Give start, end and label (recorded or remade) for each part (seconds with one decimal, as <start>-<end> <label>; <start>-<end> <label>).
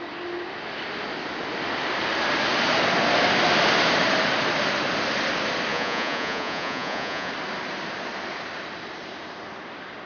0.0-5.7 recorded; 5.7-7.3 remade; 7.3-10.1 recorded